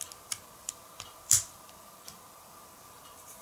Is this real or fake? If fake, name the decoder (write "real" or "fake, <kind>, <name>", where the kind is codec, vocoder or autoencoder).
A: fake, vocoder, BigVGAN v2